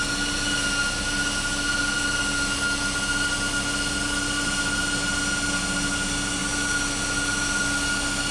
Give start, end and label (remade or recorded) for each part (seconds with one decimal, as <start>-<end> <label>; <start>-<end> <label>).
0.0-8.3 recorded